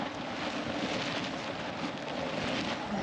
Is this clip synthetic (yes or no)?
no